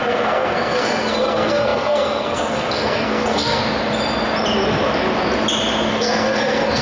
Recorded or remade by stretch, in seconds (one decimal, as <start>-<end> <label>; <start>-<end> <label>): 0.0-3.6 remade; 3.6-5.9 recorded; 5.9-6.8 remade